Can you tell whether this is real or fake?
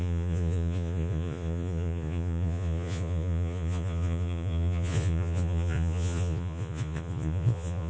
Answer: fake